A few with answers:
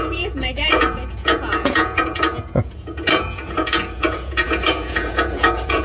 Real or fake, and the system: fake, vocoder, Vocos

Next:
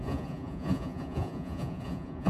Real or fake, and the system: fake, vocoder, Vocos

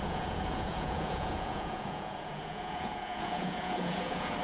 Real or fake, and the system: fake, vocoder, Vocos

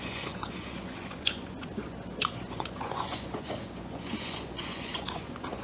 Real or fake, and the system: fake, vocoder, Vocos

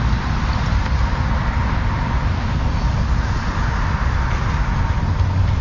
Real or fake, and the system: real